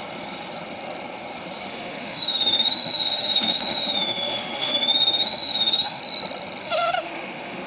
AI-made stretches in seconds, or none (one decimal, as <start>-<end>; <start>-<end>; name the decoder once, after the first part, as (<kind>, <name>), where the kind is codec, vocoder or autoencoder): 1.7-6.0 (autoencoder, DAC-VAE); 6.6-7.7